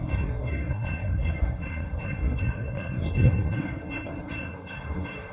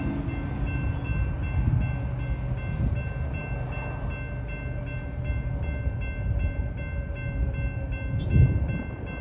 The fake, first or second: first